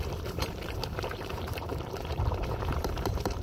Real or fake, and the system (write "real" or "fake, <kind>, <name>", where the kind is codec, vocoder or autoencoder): fake, vocoder, BigVGAN v2